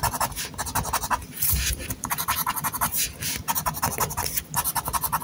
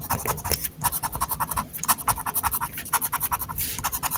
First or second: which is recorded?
first